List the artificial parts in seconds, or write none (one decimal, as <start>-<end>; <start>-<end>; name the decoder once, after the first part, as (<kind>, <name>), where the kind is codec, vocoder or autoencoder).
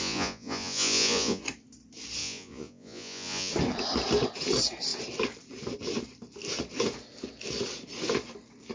0.0-1.4 (vocoder, Vocos); 2.2-3.5